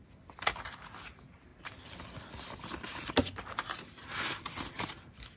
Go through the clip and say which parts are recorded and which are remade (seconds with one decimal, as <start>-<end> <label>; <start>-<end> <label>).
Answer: 0.0-5.4 recorded